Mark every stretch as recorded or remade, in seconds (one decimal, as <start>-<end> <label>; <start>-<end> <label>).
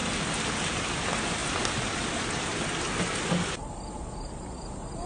0.0-5.1 recorded